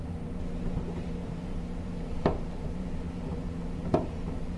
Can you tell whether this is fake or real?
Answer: fake